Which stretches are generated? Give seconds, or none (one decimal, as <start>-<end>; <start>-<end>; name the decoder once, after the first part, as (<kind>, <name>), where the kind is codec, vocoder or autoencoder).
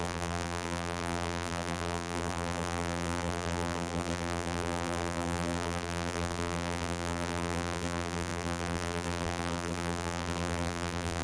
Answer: 0.0-11.2 (vocoder, BigVGAN v2)